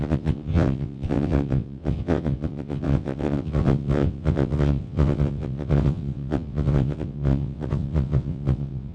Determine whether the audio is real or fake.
fake